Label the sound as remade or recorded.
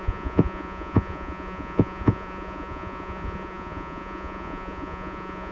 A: remade